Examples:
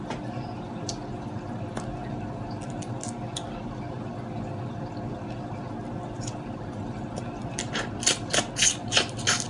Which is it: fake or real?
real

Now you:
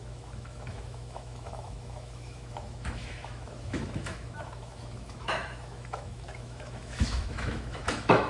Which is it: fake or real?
fake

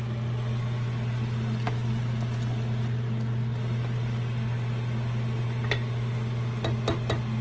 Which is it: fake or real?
real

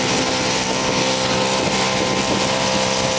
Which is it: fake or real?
real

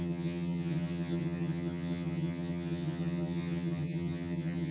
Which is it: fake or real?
fake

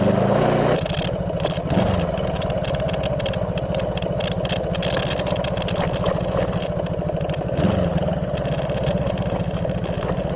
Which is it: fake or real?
real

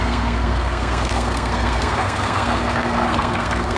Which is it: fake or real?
fake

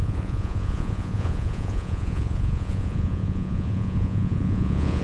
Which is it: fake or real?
fake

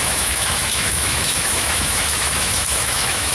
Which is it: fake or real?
fake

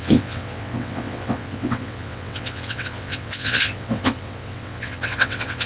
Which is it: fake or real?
fake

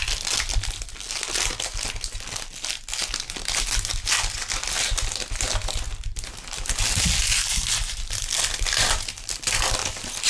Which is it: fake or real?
real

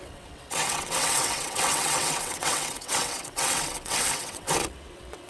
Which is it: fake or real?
fake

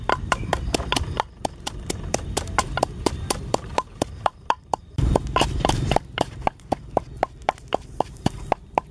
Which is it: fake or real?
fake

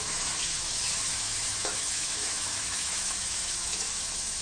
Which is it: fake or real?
fake